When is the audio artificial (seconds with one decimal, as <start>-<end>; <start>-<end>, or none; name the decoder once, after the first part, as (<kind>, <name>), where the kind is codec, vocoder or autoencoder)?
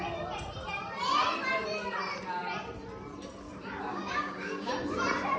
3.9-4.7 (codec, DAC)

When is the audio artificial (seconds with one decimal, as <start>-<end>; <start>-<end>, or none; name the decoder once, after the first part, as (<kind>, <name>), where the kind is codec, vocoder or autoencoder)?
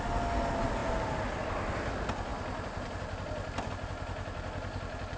none